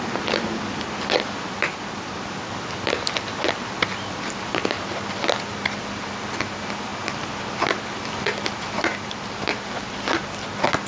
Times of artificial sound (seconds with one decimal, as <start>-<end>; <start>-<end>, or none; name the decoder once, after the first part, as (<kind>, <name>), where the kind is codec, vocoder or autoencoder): none